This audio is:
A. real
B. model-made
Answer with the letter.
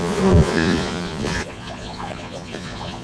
B